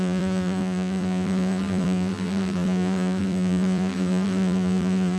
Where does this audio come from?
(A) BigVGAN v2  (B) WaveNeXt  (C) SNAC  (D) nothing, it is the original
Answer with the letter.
A